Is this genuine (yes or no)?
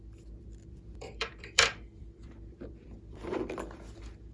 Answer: no